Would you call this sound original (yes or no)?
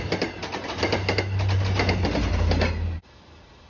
yes